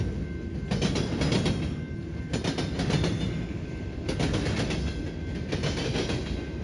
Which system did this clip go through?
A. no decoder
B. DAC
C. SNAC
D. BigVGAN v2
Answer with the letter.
A